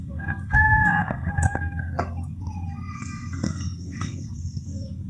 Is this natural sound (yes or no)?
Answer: no